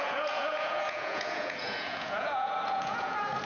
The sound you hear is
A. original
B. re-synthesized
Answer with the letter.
B